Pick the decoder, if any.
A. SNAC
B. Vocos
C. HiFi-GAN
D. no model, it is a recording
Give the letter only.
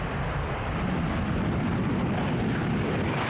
D